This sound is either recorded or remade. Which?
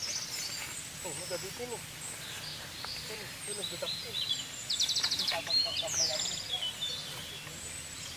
recorded